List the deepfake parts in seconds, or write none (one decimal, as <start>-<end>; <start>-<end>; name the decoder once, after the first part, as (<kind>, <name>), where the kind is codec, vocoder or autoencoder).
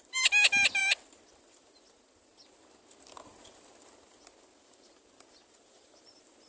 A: none